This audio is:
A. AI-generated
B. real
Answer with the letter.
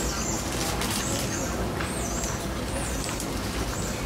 B